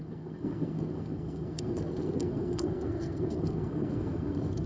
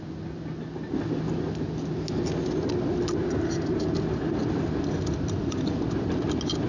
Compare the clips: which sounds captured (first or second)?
second